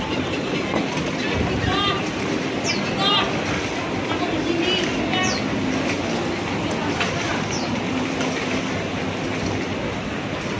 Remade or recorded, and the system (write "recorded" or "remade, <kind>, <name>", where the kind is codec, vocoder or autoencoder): recorded